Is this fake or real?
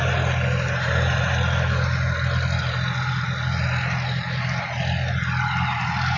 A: real